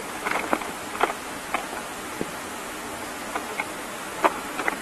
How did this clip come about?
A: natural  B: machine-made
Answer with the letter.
A